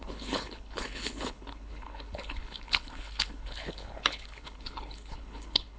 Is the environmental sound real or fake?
fake